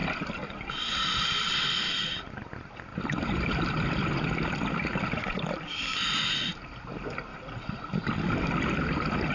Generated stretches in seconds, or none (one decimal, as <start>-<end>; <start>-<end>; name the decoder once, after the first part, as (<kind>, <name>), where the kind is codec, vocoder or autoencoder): 0.0-1.9 (vocoder, BigVGAN v2); 2.9-5.5; 7.3-8.4